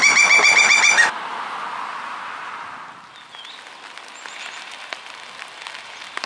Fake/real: real